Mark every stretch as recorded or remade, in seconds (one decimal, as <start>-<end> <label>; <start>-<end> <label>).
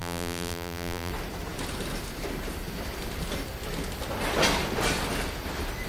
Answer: 0.0-1.1 remade; 1.1-5.9 recorded